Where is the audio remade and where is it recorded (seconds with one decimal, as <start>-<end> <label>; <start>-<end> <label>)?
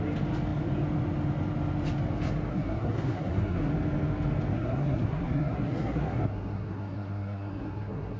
0.0-2.5 recorded; 2.5-3.7 remade; 3.7-4.5 recorded; 4.5-8.2 remade